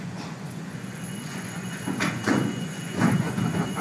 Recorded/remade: remade